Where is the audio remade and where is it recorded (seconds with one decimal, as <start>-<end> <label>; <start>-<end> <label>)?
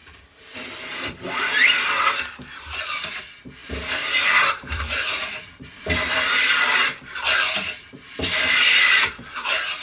0.0-9.8 remade